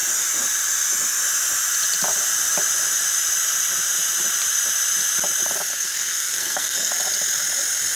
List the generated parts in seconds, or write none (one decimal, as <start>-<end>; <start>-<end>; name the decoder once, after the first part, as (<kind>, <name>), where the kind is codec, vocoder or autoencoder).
5.7-6.9 (codec, SNAC)